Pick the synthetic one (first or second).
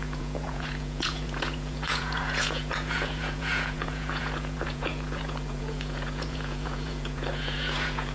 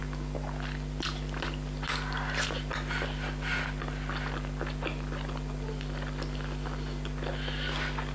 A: first